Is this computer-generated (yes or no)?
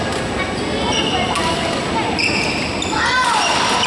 no